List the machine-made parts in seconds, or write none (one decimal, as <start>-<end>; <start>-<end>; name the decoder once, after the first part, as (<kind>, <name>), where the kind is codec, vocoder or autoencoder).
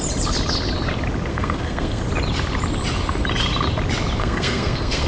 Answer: 1.3-2.0 (codec, SNAC); 4.2-5.1